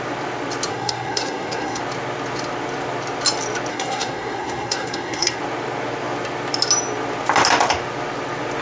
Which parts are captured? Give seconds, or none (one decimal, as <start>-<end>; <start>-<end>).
0.0-0.7; 1.8-3.7; 5.4-8.6